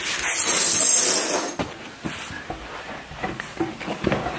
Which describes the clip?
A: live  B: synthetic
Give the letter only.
A